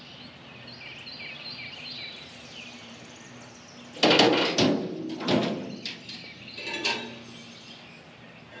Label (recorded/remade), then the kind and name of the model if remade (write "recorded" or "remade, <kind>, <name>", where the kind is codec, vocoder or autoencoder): recorded